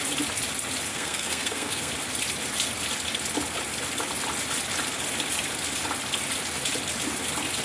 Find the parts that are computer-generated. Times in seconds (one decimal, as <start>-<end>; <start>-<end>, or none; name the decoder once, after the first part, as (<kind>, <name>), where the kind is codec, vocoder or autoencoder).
0.9-1.9 (codec, SNAC)